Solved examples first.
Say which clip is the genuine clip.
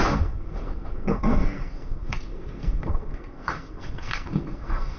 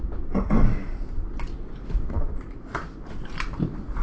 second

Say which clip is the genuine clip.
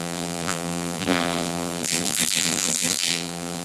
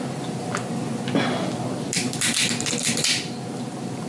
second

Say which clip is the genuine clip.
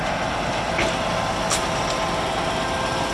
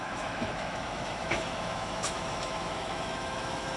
first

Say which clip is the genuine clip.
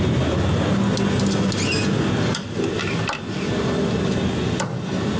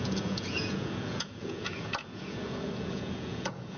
first